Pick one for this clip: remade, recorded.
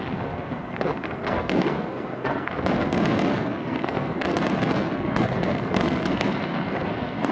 remade